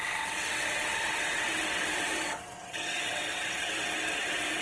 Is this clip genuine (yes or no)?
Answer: no